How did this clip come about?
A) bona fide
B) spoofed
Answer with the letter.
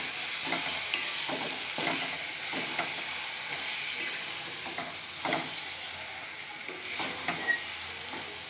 A